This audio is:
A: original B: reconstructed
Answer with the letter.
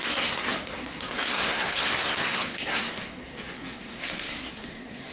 B